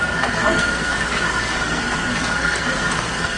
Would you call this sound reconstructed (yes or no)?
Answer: yes